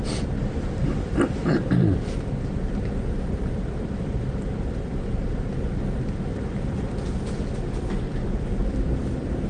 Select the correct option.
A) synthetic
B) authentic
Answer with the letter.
A